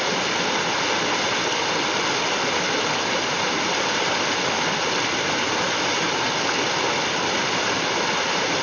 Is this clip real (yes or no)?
yes